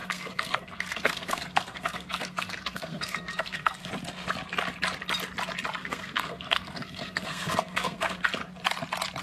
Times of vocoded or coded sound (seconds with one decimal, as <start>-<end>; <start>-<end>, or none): 0.0-3.9; 5.8-8.2